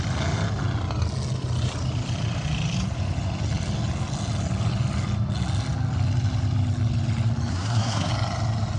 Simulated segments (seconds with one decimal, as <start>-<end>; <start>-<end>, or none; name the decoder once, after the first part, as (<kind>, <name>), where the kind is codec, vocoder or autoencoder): 7.5-8.1 (codec, SNAC)